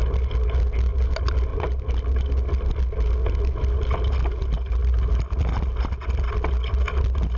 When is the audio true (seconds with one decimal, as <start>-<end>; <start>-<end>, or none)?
0.0-7.4